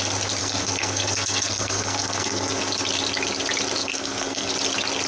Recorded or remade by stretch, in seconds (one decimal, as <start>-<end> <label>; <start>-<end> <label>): 0.0-0.4 recorded; 0.4-2.6 remade; 2.6-3.8 recorded; 3.8-4.5 remade; 4.5-5.1 recorded

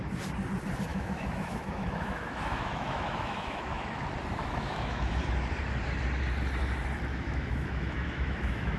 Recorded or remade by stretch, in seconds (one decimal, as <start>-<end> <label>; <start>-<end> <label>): 0.0-0.9 recorded; 0.9-4.0 remade; 4.0-4.4 recorded; 4.4-5.2 remade; 5.2-7.1 recorded; 7.1-8.8 remade

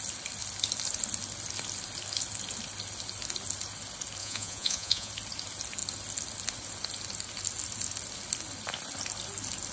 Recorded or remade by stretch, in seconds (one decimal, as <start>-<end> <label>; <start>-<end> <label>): 0.0-4.2 recorded; 4.2-5.1 remade; 5.1-9.7 recorded

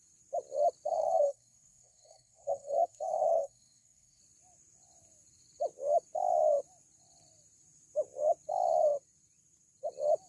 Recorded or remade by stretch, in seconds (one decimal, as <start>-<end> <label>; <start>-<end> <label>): 0.0-0.9 recorded; 0.9-4.2 remade; 4.2-10.3 recorded

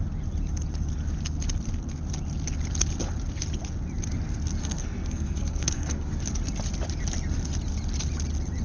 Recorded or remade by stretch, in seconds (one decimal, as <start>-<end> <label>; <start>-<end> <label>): 0.0-4.6 recorded; 4.6-6.2 remade; 6.2-8.6 recorded

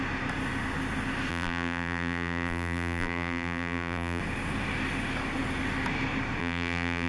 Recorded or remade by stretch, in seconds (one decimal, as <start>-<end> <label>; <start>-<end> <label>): 0.0-1.3 recorded; 1.3-4.2 remade; 4.2-6.4 recorded; 6.4-7.1 remade

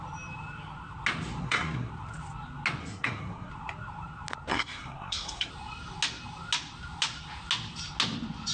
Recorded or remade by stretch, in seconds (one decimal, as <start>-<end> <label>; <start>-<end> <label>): 0.0-1.4 recorded; 1.4-1.9 remade; 1.9-2.8 recorded; 2.8-3.5 remade; 3.5-4.5 recorded; 4.5-5.5 remade; 5.5-8.5 recorded

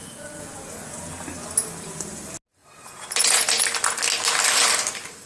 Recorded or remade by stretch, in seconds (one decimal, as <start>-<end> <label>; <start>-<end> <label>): 0.0-1.1 remade; 1.1-2.6 recorded; 2.6-3.6 remade; 3.6-5.3 recorded